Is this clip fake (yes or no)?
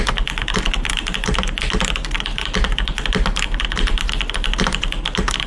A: no